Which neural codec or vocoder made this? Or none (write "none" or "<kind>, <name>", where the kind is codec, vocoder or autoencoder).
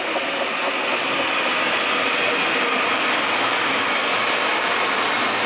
none